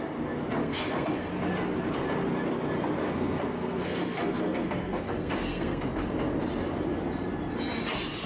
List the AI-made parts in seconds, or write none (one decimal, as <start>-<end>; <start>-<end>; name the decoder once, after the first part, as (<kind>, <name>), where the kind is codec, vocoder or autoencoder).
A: 0.6-1.3 (codec, SNAC); 3.0-5.8

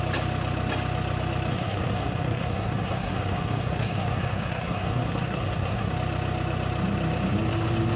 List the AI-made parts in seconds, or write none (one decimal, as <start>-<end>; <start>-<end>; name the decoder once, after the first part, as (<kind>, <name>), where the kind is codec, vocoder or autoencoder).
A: 1.5-5.9 (codec, SNAC)